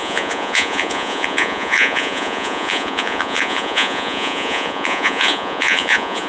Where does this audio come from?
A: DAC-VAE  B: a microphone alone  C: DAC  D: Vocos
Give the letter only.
D